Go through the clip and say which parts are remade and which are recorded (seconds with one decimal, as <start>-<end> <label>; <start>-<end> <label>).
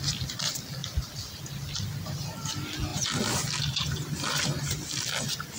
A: 0.0-5.6 recorded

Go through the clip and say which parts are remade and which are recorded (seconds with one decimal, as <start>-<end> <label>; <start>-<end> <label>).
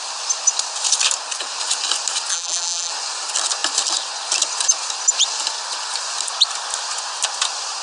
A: 0.0-2.3 recorded; 2.3-2.9 remade; 2.9-7.8 recorded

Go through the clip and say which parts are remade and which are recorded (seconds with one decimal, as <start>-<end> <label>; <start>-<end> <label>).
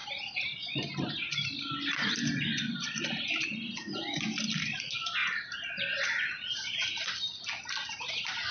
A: 0.0-0.9 remade; 0.9-5.2 recorded; 5.2-6.9 remade; 6.9-8.5 recorded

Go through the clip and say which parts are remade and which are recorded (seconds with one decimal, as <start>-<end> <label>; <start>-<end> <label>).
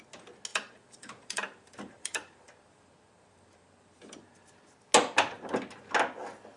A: 0.0-0.5 recorded; 0.5-4.5 remade; 4.5-6.6 recorded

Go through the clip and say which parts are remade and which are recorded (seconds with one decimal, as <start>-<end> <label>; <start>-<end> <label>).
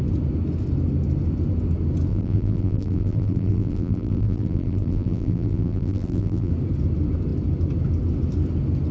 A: 0.0-2.1 recorded; 2.1-6.5 remade; 6.5-8.9 recorded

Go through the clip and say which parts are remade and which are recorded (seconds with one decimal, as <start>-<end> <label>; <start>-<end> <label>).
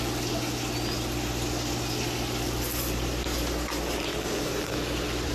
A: 0.0-5.3 recorded